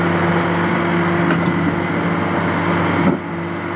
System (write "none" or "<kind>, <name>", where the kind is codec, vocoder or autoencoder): none